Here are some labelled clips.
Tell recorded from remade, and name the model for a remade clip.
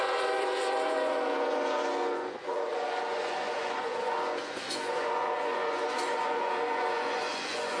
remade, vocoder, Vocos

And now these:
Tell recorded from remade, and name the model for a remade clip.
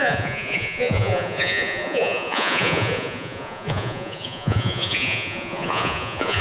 remade, vocoder, Vocos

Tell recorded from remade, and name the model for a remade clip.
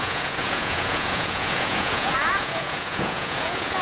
remade, vocoder, Vocos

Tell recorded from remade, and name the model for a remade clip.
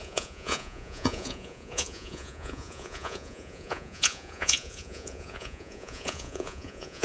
remade, vocoder, Vocos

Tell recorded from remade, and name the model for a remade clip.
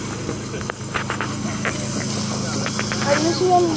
recorded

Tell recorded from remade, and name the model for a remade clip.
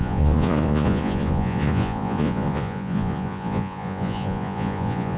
remade, vocoder, Vocos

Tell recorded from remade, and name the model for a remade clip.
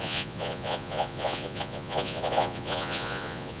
remade, vocoder, Vocos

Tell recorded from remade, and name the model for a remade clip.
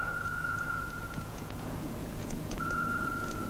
remade, vocoder, Vocos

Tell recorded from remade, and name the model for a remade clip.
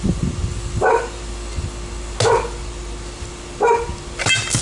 recorded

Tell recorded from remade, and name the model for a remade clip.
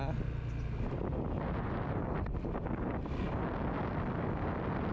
recorded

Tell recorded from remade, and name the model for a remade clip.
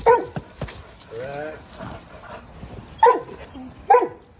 recorded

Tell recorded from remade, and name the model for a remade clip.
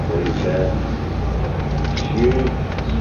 recorded